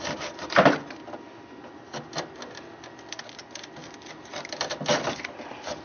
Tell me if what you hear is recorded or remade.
remade